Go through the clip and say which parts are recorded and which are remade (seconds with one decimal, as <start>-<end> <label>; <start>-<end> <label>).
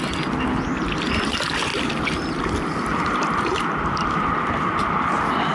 0.0-5.5 recorded